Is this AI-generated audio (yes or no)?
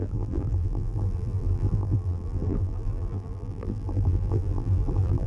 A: yes